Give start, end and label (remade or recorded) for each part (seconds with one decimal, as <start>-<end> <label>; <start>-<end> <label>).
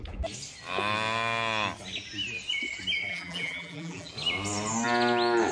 0.0-3.1 recorded; 3.1-4.1 remade; 4.1-5.5 recorded